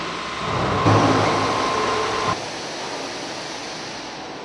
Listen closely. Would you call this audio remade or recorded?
recorded